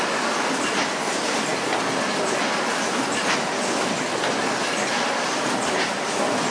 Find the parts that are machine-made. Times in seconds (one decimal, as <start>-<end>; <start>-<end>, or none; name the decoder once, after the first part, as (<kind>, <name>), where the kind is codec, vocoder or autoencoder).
none